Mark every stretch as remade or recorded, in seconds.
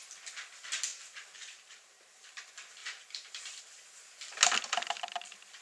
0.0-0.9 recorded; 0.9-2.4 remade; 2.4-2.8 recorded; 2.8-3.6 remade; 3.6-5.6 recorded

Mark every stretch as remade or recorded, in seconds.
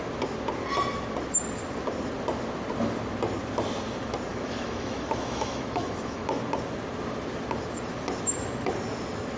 0.0-4.3 recorded; 4.3-6.4 remade; 6.4-9.4 recorded